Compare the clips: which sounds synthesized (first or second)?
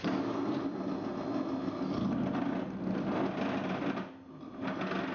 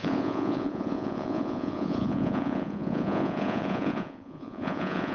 second